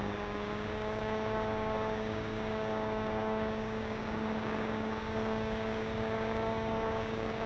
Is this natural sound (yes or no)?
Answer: no